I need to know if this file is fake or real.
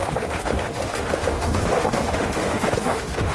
fake